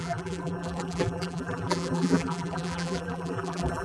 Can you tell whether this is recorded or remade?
remade